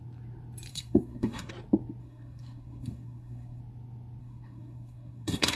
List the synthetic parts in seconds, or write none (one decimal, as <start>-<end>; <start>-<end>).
0.7-1.5; 2.0-3.6; 4.2-5.6